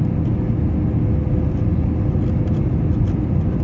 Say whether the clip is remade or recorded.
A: recorded